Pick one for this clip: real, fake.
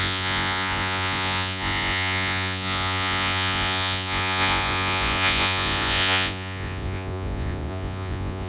fake